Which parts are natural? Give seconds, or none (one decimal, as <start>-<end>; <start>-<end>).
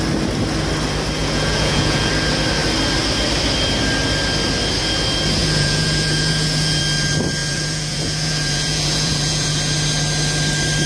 0.0-1.2; 2.1-5.4; 6.8-7.4; 9.5-10.9